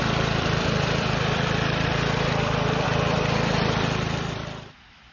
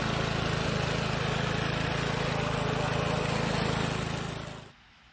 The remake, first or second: first